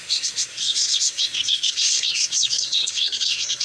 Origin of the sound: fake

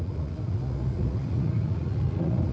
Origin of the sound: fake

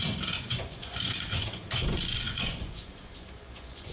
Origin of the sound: fake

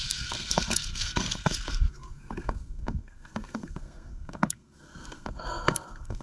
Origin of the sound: fake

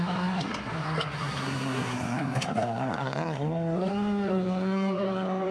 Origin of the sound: fake